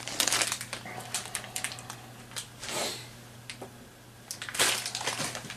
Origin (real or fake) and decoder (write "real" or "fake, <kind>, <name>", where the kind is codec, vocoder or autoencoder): real